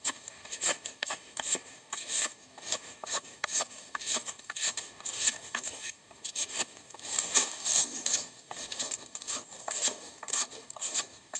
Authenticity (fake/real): fake